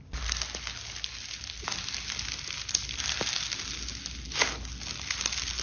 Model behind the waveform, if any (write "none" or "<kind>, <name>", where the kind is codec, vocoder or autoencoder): none